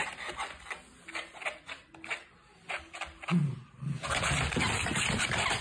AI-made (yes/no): no